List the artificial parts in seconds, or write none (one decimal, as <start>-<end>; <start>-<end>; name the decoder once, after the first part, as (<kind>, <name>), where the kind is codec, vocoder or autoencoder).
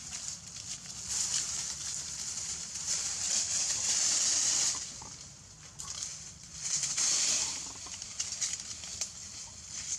2.4-3.9 (vocoder, BigVGAN v2)